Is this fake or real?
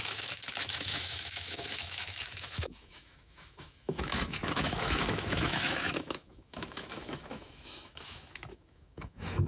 fake